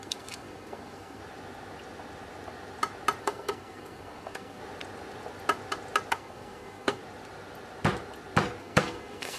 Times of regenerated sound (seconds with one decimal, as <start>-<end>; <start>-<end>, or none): 0.0-1.2; 3.2-4.6; 6.1-7.0; 8.6-9.4